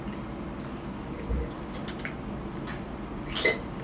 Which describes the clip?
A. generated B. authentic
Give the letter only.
B